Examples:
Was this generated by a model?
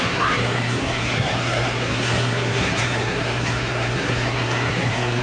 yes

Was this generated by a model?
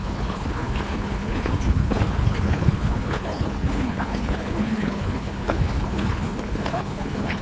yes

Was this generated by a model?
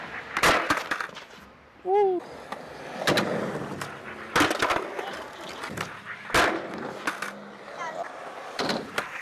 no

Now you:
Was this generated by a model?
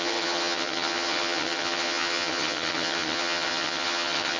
yes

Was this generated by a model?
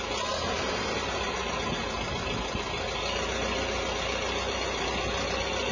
no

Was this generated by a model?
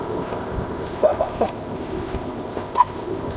yes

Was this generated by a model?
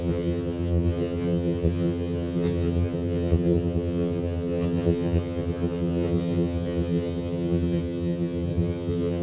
yes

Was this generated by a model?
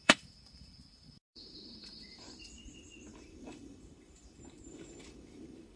yes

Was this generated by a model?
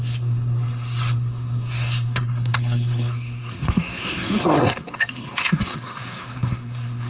yes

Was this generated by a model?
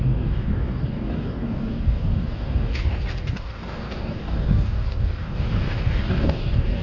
yes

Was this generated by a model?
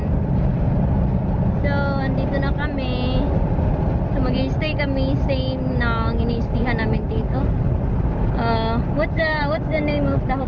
no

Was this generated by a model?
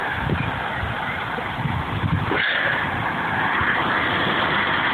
yes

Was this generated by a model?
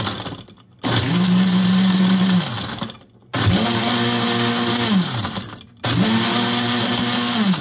no